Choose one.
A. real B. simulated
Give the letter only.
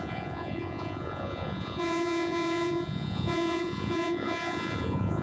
B